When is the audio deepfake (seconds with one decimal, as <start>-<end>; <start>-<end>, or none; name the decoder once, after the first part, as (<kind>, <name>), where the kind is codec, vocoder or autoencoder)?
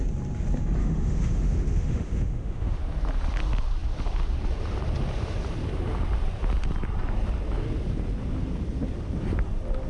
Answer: 0.8-2.8 (autoencoder, DAC-VAE)